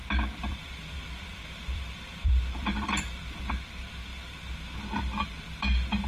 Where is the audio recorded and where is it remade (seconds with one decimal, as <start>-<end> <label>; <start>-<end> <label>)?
0.0-3.5 remade; 3.5-6.1 recorded